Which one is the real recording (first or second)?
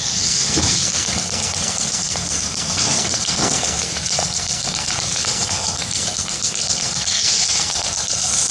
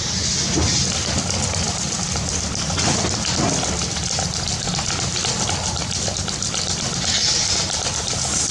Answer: second